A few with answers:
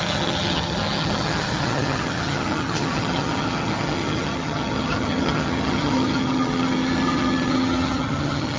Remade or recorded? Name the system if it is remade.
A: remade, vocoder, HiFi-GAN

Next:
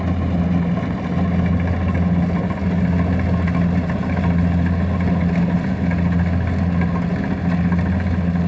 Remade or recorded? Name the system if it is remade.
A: recorded